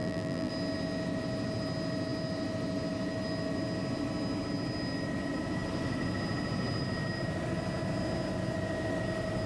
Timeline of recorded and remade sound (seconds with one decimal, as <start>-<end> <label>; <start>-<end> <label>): 0.0-0.5 remade; 0.5-9.5 recorded